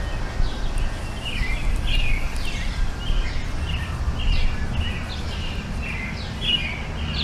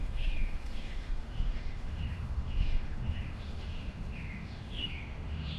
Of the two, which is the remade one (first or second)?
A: second